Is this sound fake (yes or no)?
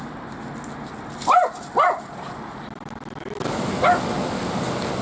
no